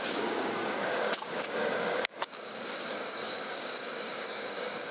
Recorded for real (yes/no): no